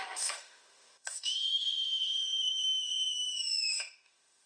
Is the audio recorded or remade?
remade